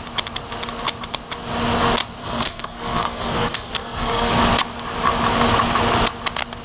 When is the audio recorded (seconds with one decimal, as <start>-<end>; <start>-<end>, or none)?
0.0-2.2; 4.3-6.6

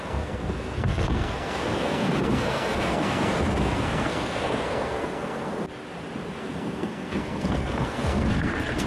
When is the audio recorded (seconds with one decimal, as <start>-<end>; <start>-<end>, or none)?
5.5-6.4

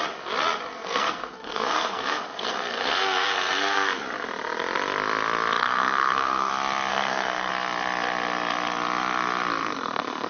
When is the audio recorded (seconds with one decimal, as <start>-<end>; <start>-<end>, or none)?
0.0-0.7; 4.0-5.6; 6.5-6.9; 7.5-9.6

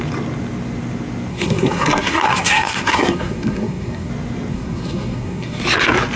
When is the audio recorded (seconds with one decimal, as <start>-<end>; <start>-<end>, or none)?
0.0-1.3; 4.1-4.5; 5.6-6.2

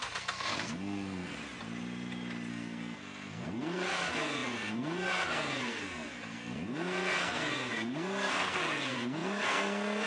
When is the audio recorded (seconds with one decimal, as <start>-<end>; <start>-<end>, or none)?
1.4-2.5